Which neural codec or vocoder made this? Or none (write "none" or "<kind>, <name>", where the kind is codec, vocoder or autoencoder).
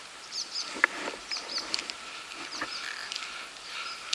vocoder, BigVGAN v2